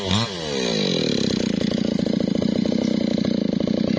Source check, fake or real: real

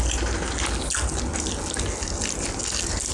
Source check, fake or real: real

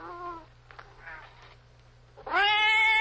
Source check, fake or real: real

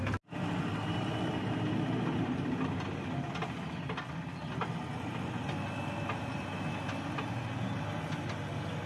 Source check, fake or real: real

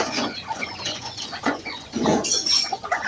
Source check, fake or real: fake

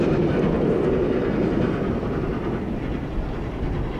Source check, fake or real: real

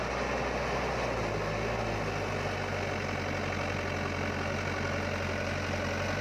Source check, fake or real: real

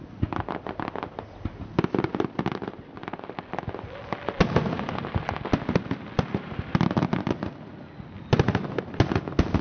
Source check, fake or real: real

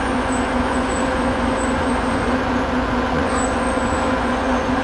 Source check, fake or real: fake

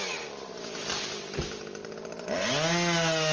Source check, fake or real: real